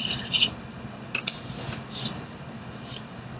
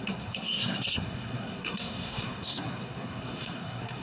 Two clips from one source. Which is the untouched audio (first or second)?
first